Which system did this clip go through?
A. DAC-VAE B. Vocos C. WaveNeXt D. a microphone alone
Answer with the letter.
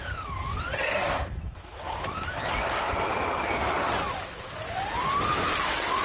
D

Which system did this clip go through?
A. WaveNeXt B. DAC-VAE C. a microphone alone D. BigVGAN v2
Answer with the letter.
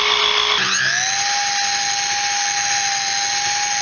C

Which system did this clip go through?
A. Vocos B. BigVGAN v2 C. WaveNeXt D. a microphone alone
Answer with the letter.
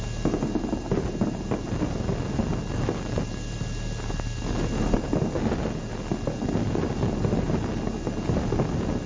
D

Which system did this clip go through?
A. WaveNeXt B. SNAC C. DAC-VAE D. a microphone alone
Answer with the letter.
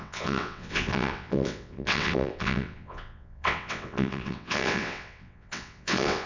A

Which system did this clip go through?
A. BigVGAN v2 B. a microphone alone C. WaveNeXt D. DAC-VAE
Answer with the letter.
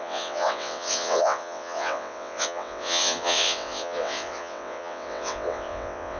C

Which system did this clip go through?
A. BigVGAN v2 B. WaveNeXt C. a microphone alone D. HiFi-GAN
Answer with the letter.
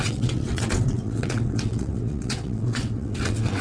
B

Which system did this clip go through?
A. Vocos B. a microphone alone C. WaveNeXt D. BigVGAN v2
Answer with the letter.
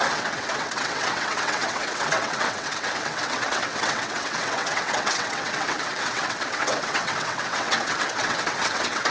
C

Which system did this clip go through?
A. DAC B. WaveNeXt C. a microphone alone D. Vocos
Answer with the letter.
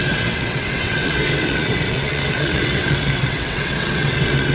B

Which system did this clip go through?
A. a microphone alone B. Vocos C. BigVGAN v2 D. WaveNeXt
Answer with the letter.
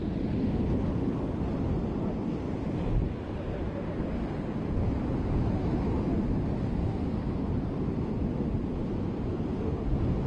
A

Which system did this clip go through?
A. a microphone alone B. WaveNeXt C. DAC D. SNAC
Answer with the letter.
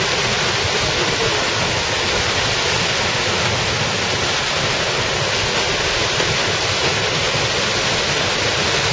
A